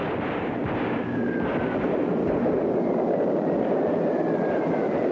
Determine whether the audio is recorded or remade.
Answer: recorded